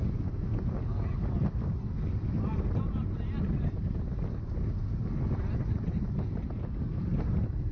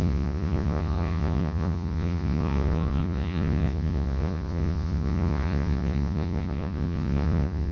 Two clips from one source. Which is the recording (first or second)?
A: first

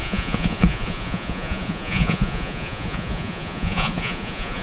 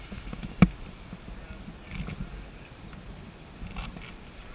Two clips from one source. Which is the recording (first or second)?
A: second